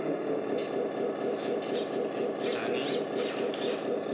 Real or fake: real